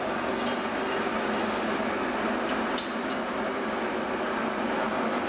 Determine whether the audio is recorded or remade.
recorded